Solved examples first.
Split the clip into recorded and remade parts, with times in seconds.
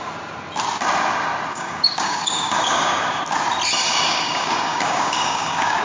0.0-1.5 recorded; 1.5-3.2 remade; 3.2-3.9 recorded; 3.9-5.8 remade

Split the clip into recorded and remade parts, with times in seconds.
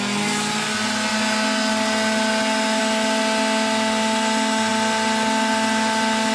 0.0-6.3 recorded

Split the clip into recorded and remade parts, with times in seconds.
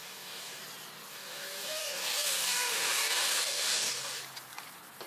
0.0-0.6 remade; 0.6-1.1 recorded; 1.1-4.2 remade; 4.2-5.1 recorded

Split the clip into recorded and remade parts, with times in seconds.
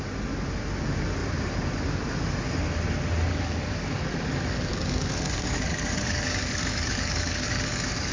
0.0-3.3 recorded; 3.3-3.9 remade; 3.9-4.7 recorded; 4.7-8.1 remade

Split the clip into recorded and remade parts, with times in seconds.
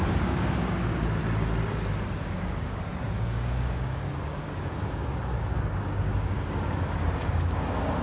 0.0-1.2 remade; 1.2-2.3 recorded; 2.3-8.0 remade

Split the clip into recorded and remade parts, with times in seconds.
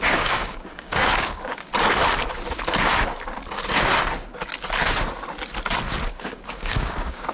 0.0-1.7 remade; 1.7-6.1 recorded; 6.1-7.3 remade